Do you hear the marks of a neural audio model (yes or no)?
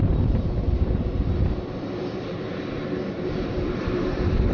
yes